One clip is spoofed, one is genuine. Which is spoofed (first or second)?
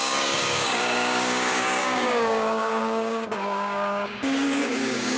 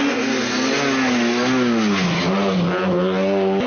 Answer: first